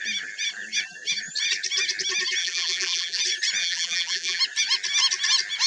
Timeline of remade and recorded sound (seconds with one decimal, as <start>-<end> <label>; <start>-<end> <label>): 0.0-2.4 recorded; 2.4-3.2 remade; 3.2-3.6 recorded; 3.6-4.4 remade; 4.4-5.7 recorded